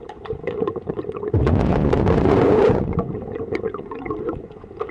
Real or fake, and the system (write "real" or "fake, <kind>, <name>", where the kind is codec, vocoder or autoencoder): fake, vocoder, Vocos